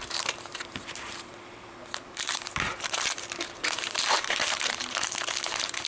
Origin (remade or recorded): remade